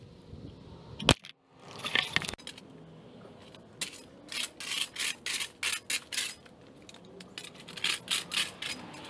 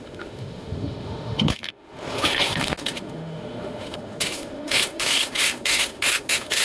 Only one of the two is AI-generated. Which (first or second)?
second